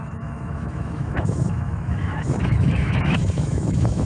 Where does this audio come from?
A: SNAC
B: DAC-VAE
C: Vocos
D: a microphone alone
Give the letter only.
B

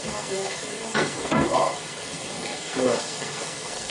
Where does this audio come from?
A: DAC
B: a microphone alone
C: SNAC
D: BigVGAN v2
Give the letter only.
C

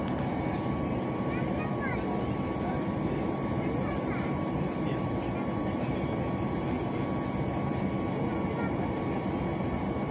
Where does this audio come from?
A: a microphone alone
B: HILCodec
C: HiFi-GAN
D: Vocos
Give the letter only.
A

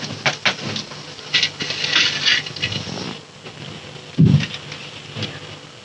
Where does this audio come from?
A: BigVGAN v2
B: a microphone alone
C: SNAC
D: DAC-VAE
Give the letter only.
B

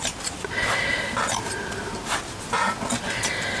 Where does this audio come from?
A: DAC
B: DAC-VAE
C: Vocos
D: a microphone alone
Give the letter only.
D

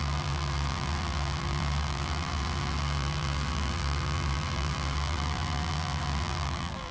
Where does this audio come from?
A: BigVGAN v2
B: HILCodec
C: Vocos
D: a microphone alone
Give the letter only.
A